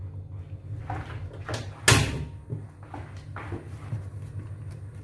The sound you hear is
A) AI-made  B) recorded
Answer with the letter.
B